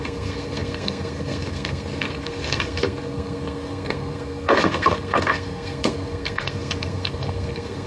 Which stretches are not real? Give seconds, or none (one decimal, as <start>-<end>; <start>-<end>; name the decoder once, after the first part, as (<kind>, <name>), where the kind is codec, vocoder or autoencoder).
0.0-7.9 (codec, SNAC)